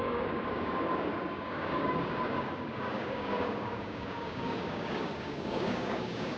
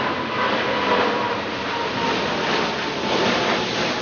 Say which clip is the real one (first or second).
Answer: second